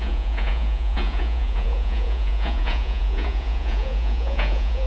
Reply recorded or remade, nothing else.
remade